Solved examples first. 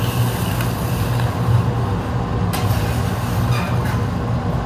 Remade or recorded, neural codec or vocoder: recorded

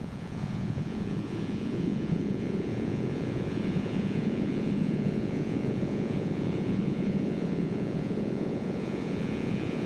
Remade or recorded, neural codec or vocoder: remade, vocoder, Vocos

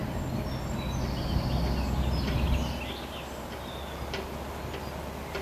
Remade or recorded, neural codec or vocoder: recorded